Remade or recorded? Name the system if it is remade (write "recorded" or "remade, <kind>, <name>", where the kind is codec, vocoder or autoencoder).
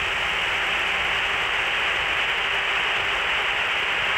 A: recorded